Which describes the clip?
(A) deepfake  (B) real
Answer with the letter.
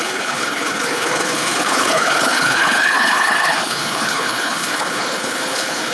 A